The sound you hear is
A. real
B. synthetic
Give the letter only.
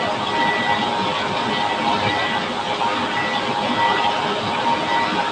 A